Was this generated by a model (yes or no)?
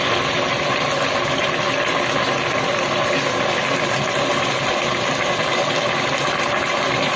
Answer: no